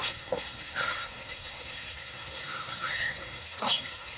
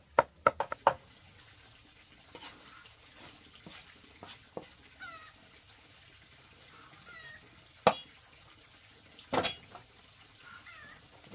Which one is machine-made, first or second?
first